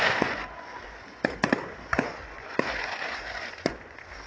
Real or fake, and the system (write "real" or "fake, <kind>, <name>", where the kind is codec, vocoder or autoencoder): fake, vocoder, Vocos